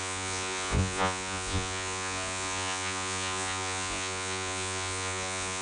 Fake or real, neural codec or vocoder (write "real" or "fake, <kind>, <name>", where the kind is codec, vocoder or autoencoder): fake, vocoder, Vocos